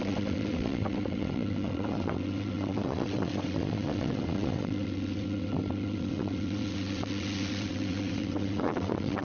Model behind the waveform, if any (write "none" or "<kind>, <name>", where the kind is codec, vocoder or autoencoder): vocoder, WaveNeXt